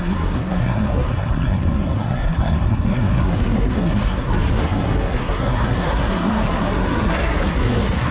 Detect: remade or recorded remade